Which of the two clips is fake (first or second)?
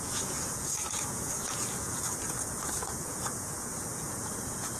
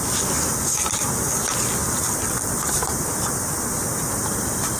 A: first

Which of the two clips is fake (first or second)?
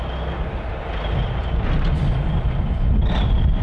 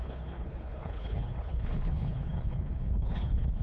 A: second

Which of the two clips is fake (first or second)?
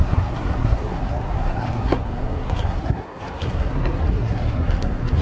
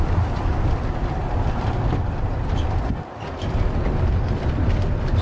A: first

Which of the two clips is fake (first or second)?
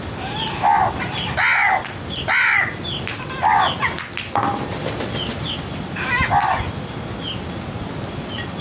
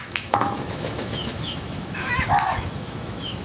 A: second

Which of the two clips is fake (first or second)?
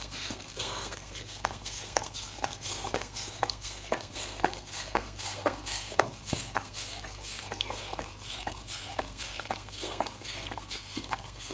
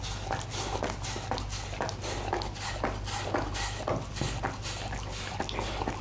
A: first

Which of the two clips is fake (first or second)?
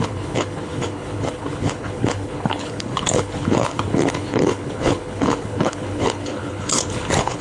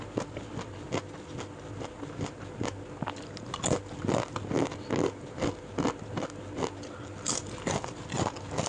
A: first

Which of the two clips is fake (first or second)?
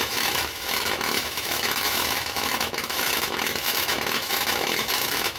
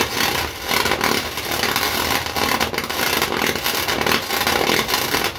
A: first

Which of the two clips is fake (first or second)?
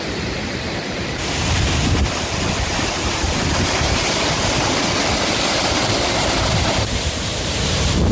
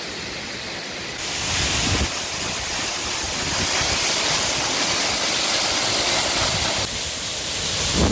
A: first